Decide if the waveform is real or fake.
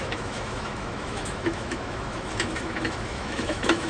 fake